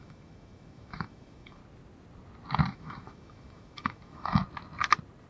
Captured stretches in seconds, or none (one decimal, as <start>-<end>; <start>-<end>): 1.6-2.7; 4.4-5.3